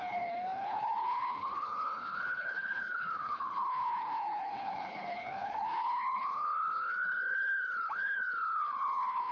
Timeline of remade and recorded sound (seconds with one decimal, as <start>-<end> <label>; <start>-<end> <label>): 0.0-9.3 remade